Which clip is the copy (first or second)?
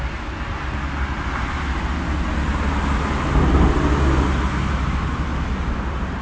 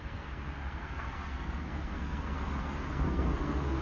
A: second